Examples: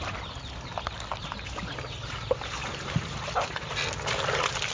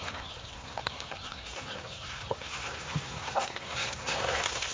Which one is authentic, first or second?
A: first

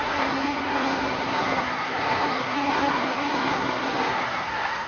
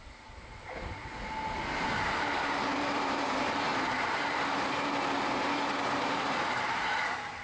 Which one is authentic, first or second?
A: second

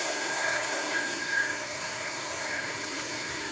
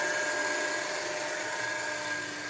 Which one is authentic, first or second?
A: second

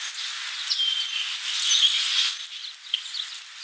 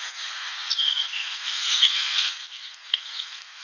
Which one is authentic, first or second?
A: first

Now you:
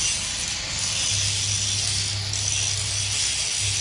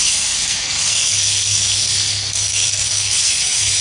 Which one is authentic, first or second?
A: first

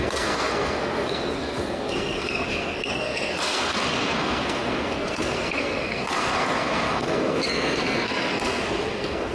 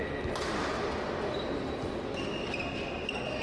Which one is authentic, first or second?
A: second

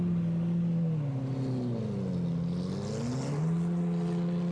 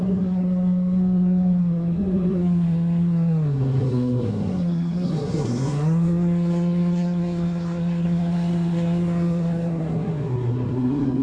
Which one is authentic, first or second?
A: first